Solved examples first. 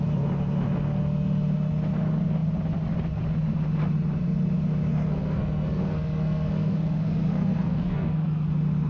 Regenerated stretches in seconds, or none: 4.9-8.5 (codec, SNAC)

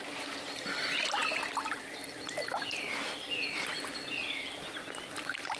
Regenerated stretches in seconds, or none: none

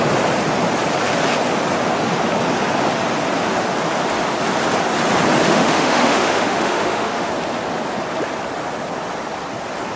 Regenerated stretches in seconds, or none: 5.4-7.3 (autoencoder, DAC-VAE)

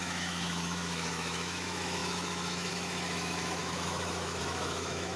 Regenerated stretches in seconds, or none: 0.0-5.2 (autoencoder, DAC-VAE)